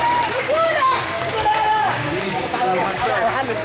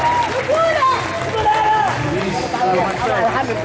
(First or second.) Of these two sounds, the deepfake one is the first